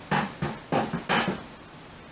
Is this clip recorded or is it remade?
recorded